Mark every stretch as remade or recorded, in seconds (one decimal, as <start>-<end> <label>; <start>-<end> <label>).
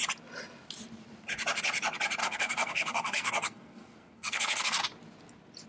0.0-2.2 recorded; 2.2-4.8 remade; 4.8-5.7 recorded